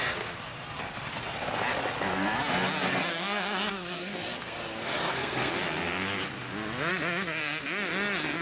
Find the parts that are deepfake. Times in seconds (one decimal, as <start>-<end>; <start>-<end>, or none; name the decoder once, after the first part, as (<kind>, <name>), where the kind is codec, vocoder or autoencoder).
3.1-5.5 (codec, SNAC)